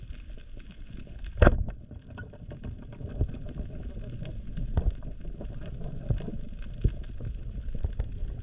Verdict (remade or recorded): recorded